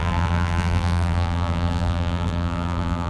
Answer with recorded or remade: remade